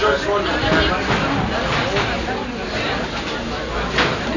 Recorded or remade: recorded